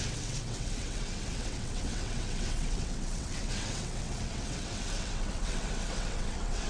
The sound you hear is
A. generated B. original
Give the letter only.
A